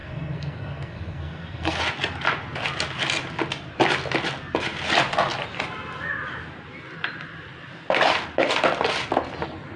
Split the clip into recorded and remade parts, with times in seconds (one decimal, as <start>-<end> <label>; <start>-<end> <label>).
0.0-1.8 remade; 1.8-9.8 recorded